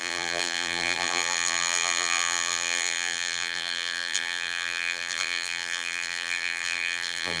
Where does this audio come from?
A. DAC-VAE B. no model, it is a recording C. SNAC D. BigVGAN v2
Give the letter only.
D